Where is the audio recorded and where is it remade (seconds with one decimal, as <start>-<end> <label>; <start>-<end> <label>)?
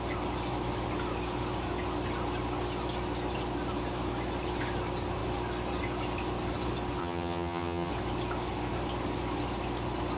0.0-7.0 recorded; 7.0-7.9 remade; 7.9-10.2 recorded